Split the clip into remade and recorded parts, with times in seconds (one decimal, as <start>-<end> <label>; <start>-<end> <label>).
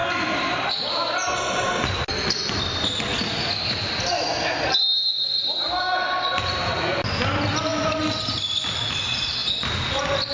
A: 0.0-10.3 recorded